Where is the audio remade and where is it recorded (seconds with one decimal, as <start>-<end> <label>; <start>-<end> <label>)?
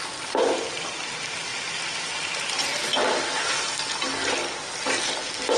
0.0-5.6 recorded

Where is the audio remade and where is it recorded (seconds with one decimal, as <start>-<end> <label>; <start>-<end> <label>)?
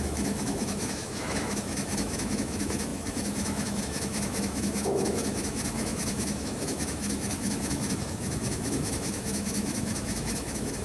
0.0-10.8 remade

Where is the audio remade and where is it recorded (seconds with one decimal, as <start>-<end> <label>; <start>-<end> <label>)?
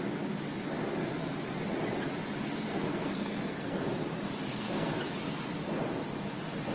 0.0-2.7 recorded; 2.7-3.8 remade; 3.8-4.5 recorded; 4.5-5.0 remade; 5.0-6.7 recorded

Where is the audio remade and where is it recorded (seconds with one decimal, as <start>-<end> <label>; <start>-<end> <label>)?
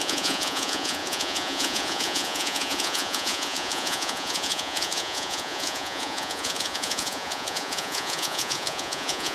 0.0-9.3 remade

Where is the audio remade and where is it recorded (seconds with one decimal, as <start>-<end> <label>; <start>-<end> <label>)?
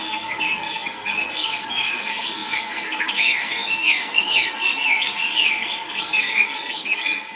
0.0-7.4 remade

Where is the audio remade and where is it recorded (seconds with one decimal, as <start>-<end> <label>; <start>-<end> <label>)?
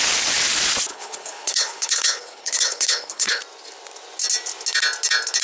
0.0-0.9 recorded; 0.9-3.4 remade; 3.4-5.4 recorded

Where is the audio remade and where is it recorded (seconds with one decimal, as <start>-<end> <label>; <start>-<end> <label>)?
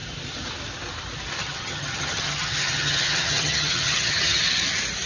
0.0-1.4 recorded; 1.4-4.4 remade; 4.4-5.1 recorded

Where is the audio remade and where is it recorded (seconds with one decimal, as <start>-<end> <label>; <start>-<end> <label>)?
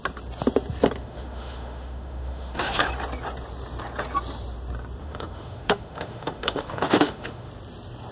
0.0-1.0 recorded; 1.0-2.9 remade; 2.9-5.0 recorded; 5.0-7.5 remade; 7.5-8.1 recorded